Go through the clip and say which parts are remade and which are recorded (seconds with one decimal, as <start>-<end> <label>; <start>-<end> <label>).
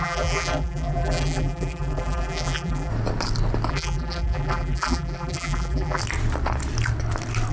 0.0-2.9 remade; 2.9-3.7 recorded; 3.7-6.0 remade; 6.0-7.5 recorded